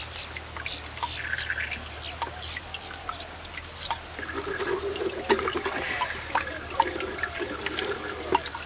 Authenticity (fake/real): real